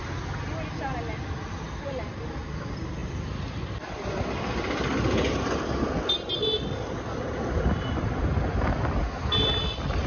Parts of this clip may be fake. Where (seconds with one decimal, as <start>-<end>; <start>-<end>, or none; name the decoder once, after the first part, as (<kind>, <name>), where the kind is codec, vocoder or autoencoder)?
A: none